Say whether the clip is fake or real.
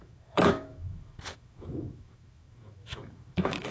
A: fake